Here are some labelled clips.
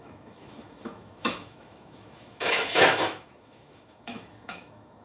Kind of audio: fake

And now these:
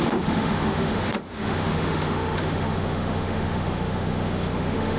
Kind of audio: fake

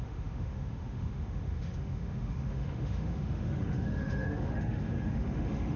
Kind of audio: fake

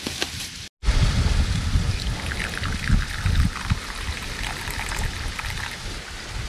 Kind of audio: real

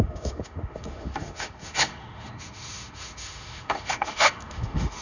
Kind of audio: fake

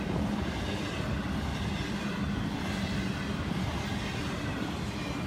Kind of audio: real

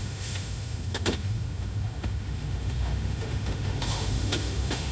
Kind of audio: fake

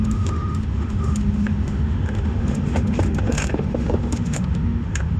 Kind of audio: fake